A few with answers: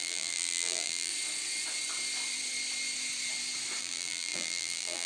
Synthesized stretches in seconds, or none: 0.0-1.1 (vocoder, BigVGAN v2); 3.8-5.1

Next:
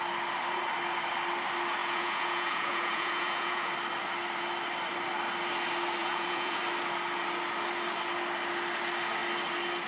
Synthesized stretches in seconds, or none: 1.8-3.7 (vocoder, Vocos); 6.0-6.6